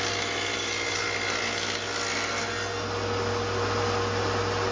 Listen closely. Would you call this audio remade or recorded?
recorded